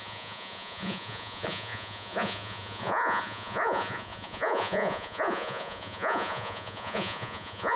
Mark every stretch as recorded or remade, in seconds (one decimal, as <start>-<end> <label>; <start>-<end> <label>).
0.0-7.8 remade